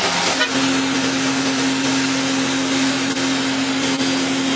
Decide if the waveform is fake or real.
real